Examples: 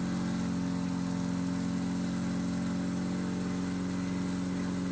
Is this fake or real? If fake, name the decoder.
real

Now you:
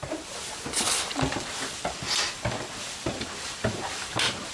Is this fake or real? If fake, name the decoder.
real